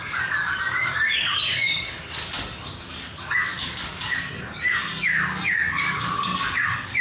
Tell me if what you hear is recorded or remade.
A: remade